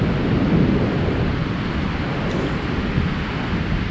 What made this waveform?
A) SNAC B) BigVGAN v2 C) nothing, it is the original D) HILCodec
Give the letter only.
C